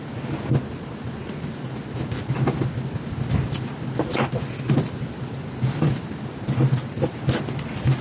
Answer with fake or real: real